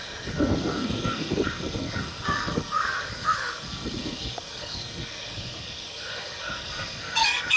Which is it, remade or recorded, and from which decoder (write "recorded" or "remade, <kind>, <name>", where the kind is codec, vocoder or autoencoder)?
remade, codec, SNAC